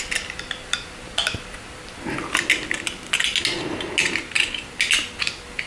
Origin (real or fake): real